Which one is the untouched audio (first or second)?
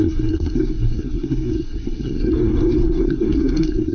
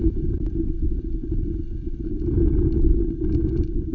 second